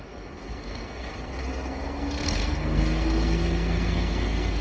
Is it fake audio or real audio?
fake